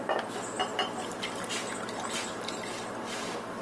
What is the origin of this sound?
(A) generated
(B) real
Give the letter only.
B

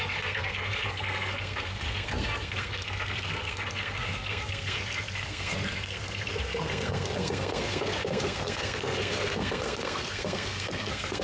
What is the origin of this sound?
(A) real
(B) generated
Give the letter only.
B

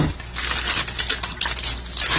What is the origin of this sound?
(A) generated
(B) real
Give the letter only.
B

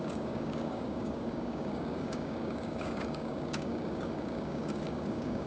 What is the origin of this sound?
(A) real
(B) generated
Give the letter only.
B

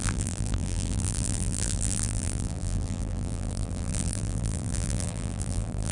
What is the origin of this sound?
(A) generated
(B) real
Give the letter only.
A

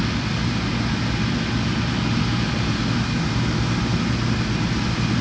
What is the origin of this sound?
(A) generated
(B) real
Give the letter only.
B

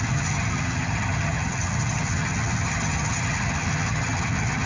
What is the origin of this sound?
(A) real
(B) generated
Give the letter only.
B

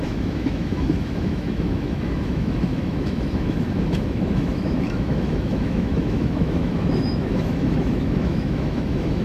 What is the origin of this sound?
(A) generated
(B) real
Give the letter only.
A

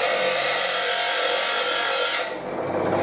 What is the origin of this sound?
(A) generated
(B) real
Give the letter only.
B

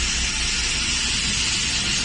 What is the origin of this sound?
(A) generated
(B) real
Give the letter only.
B